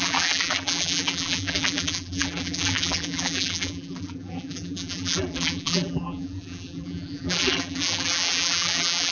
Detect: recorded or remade remade